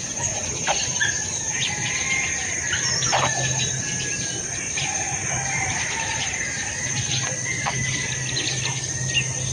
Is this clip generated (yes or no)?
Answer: no